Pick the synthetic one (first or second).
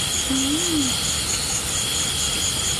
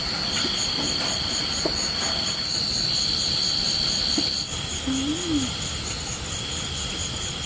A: second